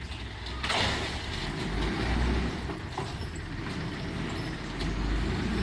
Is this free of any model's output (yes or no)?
yes